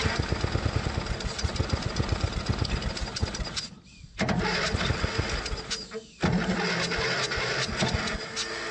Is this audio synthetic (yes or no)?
no